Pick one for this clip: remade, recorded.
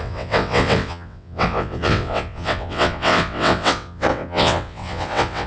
remade